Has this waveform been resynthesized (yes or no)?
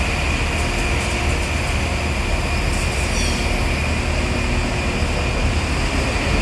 no